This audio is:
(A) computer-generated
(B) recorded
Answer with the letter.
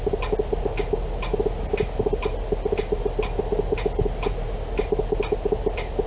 B